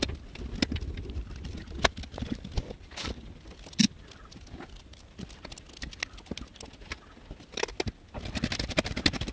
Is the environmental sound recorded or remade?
recorded